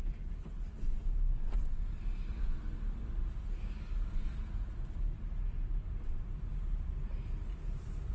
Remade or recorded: recorded